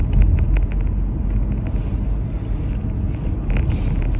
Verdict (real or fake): real